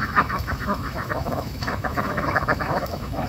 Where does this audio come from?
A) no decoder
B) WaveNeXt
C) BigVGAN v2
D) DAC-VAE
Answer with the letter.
D